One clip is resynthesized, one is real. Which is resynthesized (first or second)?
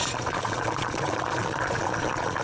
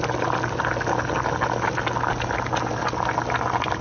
first